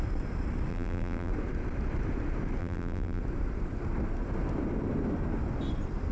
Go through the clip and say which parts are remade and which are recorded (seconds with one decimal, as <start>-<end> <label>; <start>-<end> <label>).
0.0-0.7 recorded; 0.7-1.3 remade; 1.3-2.6 recorded; 2.6-3.2 remade; 3.2-6.1 recorded